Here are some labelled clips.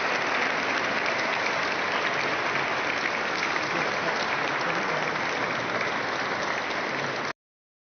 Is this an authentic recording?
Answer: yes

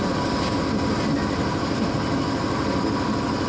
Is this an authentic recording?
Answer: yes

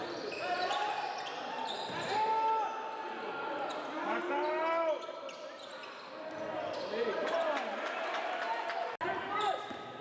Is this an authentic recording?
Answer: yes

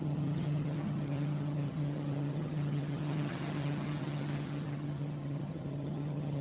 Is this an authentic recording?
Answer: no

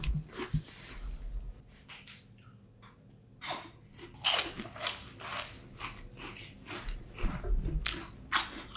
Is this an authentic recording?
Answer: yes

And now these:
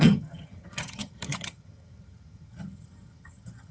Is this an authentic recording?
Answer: no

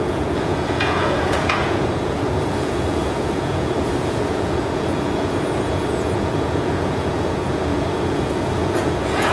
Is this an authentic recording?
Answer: no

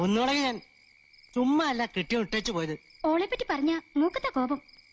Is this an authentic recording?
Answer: yes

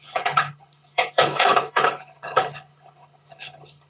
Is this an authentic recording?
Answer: no